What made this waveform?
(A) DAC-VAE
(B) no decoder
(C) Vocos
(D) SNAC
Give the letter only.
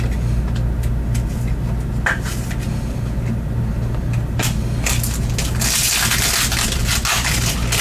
B